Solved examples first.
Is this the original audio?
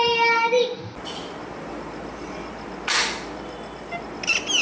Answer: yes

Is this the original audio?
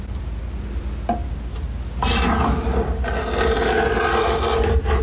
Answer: yes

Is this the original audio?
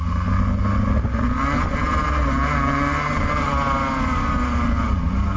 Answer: yes